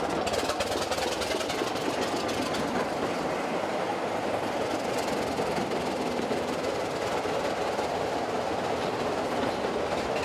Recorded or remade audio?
recorded